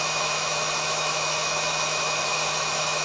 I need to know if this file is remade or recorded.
remade